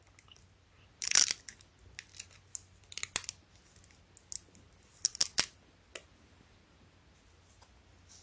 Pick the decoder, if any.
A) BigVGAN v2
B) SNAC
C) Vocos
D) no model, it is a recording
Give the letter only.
D